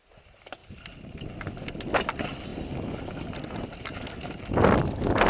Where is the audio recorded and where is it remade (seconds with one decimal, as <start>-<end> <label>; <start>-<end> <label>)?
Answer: 0.0-5.3 recorded